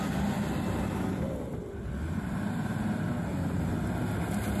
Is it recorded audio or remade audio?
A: recorded